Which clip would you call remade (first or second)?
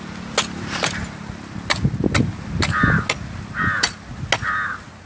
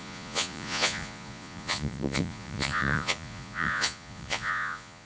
second